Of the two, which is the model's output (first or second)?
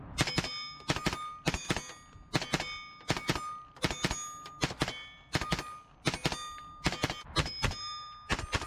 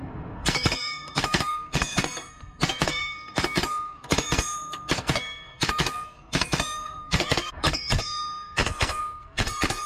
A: second